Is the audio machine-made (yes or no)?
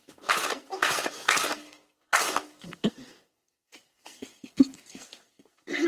yes